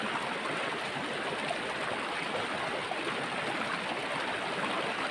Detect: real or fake real